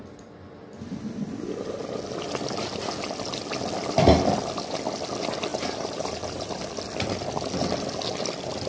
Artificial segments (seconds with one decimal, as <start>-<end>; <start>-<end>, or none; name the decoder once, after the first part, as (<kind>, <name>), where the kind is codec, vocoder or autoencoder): 5.5-6.6 (vocoder, BigVGAN v2)